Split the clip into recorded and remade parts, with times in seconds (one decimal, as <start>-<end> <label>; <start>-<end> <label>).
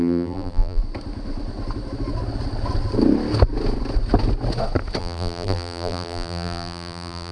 0.0-0.8 remade; 0.8-5.0 recorded; 5.0-7.3 remade